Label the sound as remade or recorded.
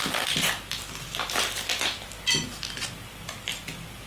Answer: recorded